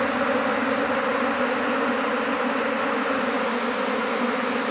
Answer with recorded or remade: recorded